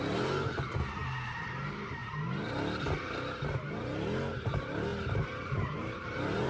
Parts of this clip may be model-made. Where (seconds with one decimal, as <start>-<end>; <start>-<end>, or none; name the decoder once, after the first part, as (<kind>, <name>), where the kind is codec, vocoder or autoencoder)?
0.0-1.0 (vocoder, BigVGAN v2); 1.5-2.0; 4.3-6.5